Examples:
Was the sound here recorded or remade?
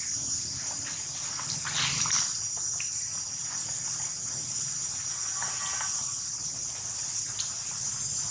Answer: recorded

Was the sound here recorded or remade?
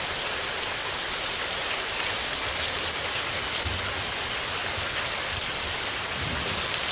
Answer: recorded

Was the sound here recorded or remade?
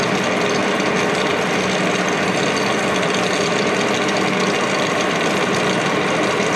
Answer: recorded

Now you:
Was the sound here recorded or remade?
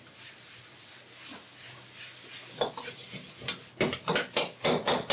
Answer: recorded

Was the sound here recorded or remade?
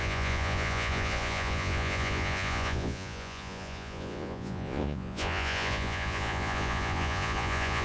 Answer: remade